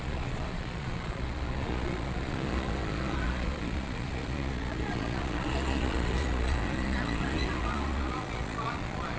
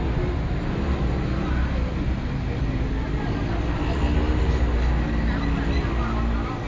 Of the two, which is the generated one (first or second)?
first